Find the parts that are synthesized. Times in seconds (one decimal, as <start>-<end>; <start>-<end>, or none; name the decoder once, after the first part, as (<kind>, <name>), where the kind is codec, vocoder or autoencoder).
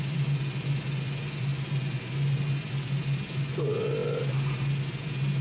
none